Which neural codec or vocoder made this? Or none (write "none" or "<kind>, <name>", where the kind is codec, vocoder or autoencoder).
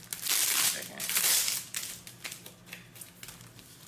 none